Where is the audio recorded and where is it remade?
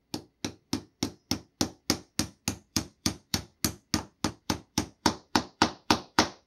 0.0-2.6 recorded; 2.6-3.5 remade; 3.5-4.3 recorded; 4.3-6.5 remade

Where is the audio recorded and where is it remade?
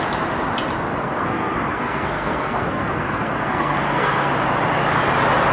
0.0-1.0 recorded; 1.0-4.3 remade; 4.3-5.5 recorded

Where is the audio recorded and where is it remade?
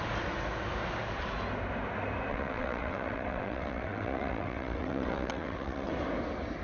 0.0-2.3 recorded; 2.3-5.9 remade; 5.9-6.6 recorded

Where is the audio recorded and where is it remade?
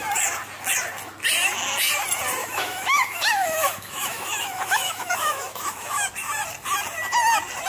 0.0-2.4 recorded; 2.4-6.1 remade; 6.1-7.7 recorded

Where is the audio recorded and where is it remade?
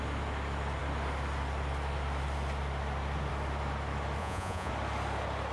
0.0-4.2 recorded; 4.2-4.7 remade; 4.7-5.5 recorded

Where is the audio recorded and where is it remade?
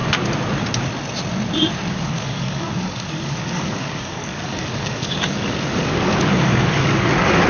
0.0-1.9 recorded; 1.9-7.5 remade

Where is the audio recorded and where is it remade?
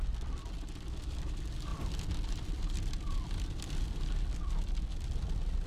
0.0-1.7 recorded; 1.7-4.1 remade; 4.1-5.7 recorded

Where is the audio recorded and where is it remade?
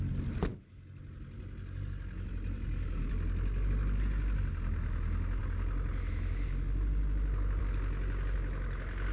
0.0-9.1 recorded